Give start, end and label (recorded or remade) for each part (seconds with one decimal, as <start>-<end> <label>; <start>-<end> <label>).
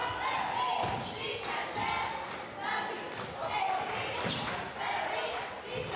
0.0-6.0 recorded